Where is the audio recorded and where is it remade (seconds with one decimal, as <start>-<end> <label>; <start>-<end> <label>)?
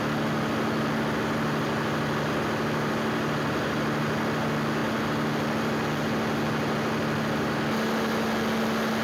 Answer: 0.0-9.0 recorded